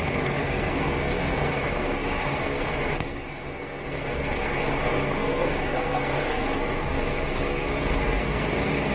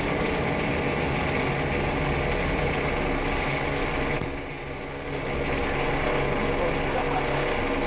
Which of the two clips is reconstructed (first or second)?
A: first